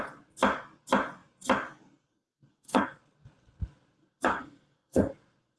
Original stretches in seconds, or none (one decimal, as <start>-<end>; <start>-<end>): 0.0-2.5; 3.0-4.3; 5.1-5.6